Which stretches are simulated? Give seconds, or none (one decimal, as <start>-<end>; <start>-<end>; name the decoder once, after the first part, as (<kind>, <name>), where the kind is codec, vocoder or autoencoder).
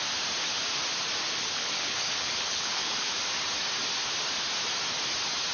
1.3-3.1 (codec, HILCodec)